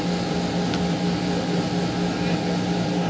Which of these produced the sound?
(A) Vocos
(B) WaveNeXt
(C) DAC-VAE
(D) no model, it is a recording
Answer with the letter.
D